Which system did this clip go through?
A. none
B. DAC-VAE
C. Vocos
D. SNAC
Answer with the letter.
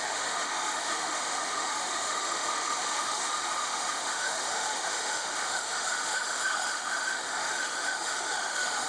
B